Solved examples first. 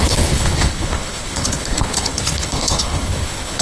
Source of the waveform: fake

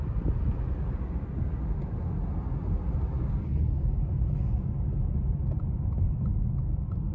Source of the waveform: real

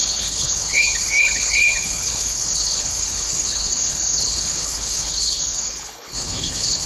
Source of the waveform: fake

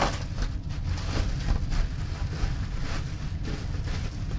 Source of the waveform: real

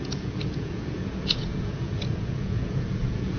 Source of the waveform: fake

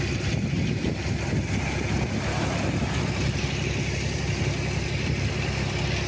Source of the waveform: real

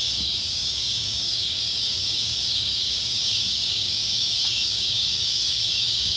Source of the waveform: fake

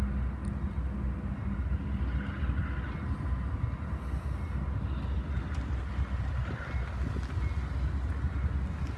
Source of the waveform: real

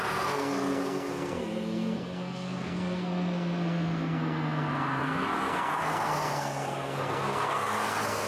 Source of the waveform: fake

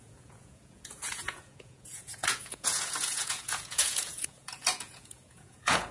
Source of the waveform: fake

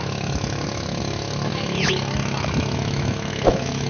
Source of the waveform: fake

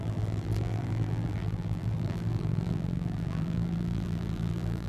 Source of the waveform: fake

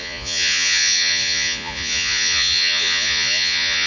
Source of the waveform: fake